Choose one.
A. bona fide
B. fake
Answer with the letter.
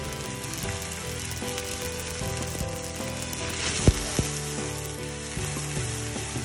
A